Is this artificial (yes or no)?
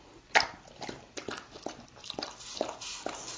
no